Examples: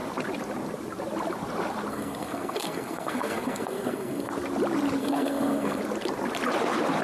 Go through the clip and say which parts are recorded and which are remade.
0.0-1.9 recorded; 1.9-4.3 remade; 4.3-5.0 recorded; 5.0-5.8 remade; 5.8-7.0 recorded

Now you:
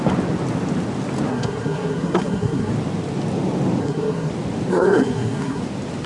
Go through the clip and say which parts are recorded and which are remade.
0.0-1.3 recorded; 1.3-2.7 remade; 2.7-3.8 recorded; 3.8-4.3 remade; 4.3-4.7 recorded; 4.7-5.6 remade; 5.6-6.1 recorded

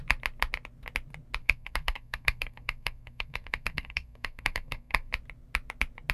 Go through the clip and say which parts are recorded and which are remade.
0.0-1.4 recorded; 1.4-5.1 remade; 5.1-6.1 recorded